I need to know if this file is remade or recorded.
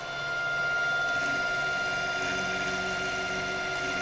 recorded